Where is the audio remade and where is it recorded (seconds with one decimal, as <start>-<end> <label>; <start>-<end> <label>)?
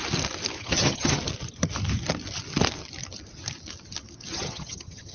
0.0-0.6 recorded; 0.6-1.2 remade; 1.2-4.3 recorded; 4.3-5.1 remade